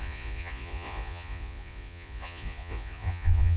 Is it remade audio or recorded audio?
remade